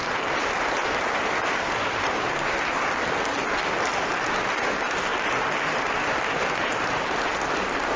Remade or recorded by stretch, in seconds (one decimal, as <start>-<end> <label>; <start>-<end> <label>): 0.0-1.2 remade; 1.2-8.0 recorded